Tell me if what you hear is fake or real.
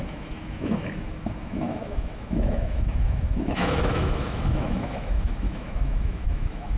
fake